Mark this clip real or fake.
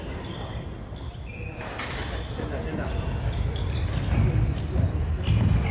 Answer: real